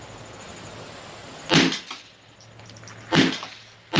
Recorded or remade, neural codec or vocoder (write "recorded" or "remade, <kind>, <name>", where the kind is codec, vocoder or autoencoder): recorded